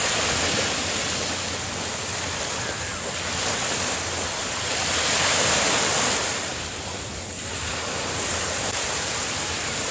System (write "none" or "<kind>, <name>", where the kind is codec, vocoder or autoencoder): vocoder, BigVGAN v2